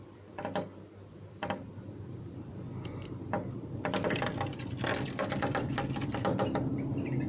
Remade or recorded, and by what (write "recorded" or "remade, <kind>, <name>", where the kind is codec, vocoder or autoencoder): remade, vocoder, BigVGAN v2